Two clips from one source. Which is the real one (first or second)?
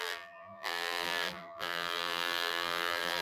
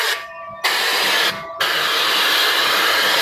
second